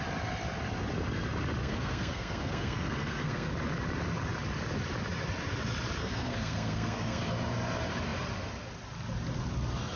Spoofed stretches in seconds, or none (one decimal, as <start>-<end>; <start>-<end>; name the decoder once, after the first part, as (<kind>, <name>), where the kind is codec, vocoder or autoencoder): 1.6-3.5 (codec, SNAC); 6.0-7.2